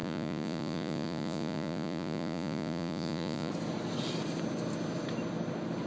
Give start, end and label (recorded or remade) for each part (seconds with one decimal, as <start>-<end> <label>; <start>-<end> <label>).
0.0-3.5 remade; 3.5-5.9 recorded